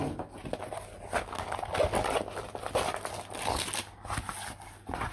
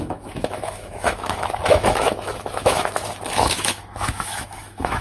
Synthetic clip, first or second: second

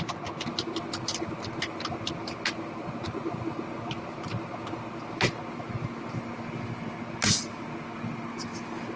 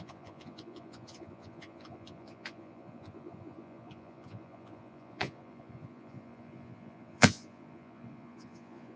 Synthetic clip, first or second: second